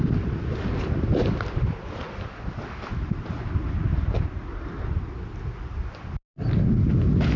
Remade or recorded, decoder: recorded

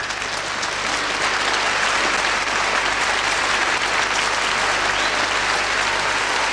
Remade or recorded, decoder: recorded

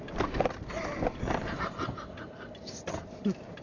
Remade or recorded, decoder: recorded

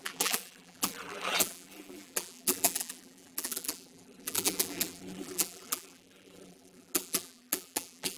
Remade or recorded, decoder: remade, vocoder, BigVGAN v2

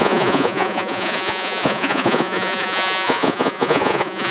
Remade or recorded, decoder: remade, vocoder, Vocos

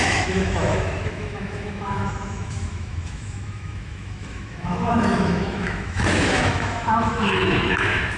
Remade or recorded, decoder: remade, autoencoder, DAC-VAE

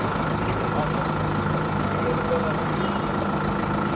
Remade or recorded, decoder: recorded